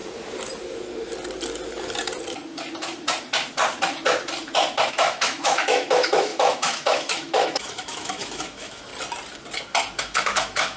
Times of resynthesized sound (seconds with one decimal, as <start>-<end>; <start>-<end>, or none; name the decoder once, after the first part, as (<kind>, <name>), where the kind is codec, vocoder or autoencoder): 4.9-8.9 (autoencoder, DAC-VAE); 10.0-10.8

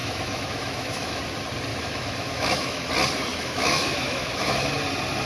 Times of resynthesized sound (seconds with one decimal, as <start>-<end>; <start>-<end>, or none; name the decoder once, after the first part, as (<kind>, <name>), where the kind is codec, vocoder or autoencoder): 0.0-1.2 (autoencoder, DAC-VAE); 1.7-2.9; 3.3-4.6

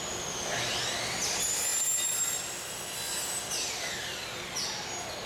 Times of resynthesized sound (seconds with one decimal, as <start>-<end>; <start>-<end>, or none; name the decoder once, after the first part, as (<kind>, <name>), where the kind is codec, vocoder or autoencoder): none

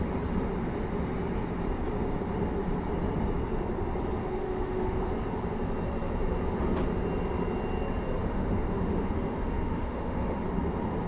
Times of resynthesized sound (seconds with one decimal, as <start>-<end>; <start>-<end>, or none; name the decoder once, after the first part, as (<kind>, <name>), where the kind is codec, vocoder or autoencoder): 4.2-5.1 (autoencoder, DAC-VAE); 8.2-10.4